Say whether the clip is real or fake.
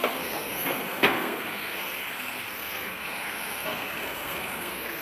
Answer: fake